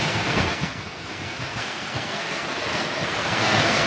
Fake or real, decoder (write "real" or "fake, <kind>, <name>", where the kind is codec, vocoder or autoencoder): fake, codec, SNAC